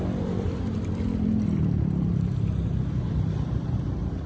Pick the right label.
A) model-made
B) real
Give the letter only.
A